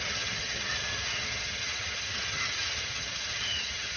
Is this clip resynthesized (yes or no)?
yes